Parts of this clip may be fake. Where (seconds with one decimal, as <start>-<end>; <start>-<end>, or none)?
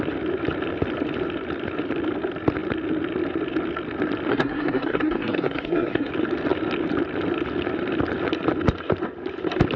4.3-6.1